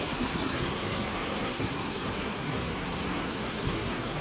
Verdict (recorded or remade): remade